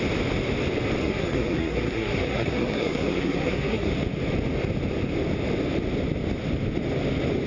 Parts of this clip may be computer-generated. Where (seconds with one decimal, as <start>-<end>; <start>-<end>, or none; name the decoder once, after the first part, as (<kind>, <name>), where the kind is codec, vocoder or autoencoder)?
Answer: 1.0-3.9 (codec, SNAC)